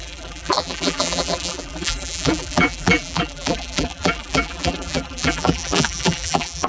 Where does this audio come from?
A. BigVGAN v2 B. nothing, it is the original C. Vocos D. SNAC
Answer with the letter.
A